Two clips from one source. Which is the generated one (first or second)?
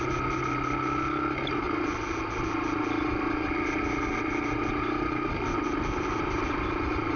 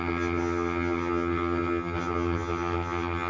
second